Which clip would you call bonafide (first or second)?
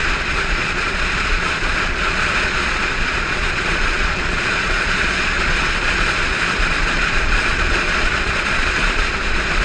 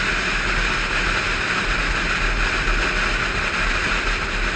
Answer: second